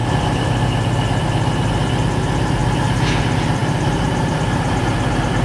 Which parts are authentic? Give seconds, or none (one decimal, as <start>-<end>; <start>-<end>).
2.6-3.2